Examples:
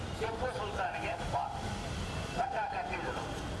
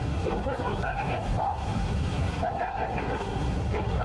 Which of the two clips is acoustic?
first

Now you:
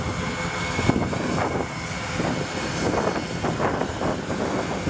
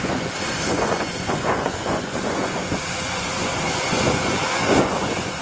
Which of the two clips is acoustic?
first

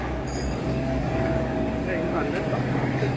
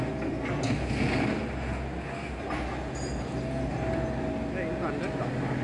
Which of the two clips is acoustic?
second